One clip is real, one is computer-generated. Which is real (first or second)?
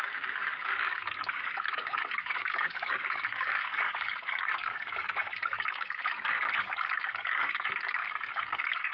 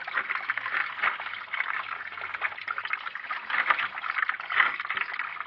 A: second